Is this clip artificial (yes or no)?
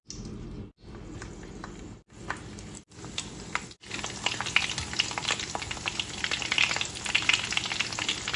no